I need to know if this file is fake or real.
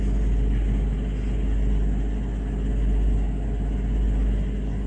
real